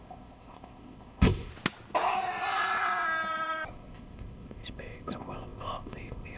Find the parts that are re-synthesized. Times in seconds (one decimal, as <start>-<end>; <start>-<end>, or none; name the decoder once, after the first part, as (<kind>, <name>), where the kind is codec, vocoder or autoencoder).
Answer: 0.0-1.5 (codec, ZipCodec); 3.7-6.4